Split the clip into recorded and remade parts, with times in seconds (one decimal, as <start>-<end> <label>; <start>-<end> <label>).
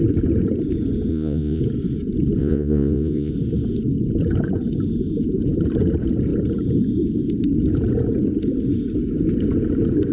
0.0-1.1 recorded; 1.1-1.6 remade; 1.6-2.4 recorded; 2.4-3.3 remade; 3.3-10.1 recorded